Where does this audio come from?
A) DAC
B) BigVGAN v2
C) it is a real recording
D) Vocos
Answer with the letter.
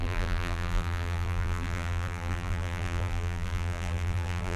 B